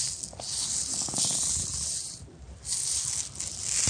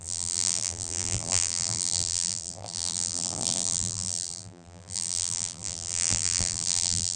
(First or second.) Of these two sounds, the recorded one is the first